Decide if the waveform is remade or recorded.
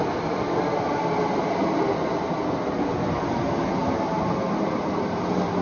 recorded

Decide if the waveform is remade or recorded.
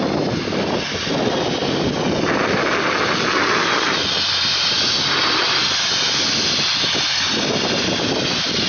recorded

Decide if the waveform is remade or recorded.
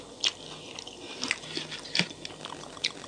recorded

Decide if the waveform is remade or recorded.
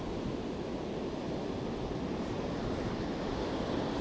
recorded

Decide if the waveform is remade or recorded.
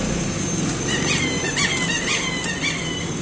recorded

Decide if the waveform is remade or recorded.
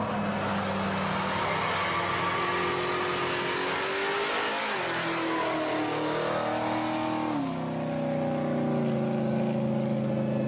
recorded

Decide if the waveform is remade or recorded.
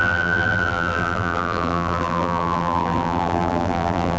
remade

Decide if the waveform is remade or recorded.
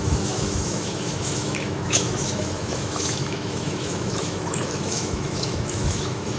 remade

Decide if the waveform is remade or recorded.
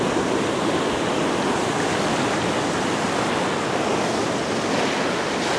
recorded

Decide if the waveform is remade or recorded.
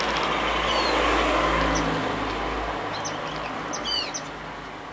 recorded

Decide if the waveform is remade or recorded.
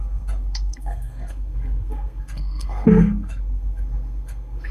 remade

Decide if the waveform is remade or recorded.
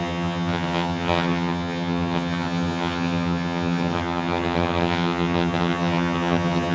remade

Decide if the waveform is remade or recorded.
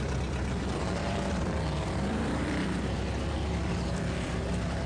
remade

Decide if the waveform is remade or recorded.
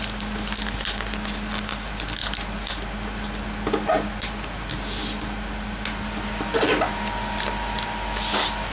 recorded